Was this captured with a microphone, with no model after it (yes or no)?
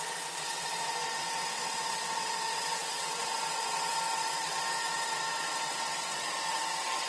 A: no